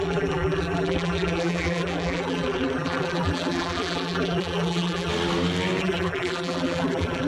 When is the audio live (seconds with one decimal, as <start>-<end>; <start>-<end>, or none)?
5.1-5.8